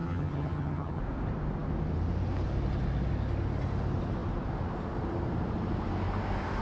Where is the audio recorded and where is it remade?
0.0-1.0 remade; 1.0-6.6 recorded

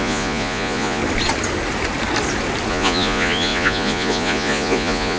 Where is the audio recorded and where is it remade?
0.0-1.0 remade; 1.0-2.7 recorded; 2.7-5.2 remade